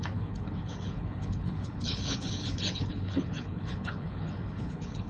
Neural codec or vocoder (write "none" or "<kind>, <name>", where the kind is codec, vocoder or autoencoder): codec, HILCodec